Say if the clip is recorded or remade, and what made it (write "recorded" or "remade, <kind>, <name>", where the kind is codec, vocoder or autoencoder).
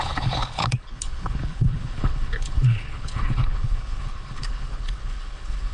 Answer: remade, codec, HILCodec